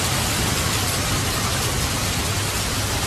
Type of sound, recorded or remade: recorded